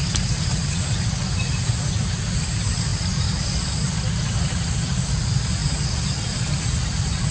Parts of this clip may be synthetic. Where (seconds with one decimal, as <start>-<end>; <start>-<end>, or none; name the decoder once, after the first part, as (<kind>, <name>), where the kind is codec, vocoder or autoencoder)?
none